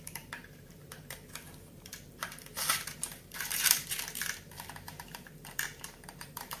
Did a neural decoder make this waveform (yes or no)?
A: yes